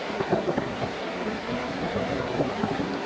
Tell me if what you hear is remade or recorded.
remade